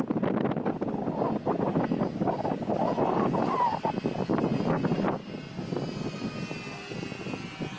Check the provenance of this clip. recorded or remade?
recorded